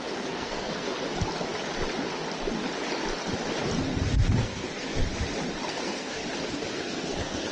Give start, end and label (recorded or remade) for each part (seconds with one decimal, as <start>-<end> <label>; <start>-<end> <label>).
0.0-0.9 remade; 0.9-4.4 recorded; 4.4-5.0 remade; 5.0-5.7 recorded; 5.7-6.2 remade; 6.2-6.7 recorded; 6.7-7.5 remade